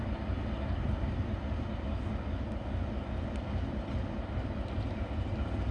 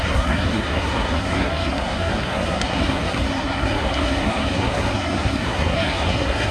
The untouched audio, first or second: first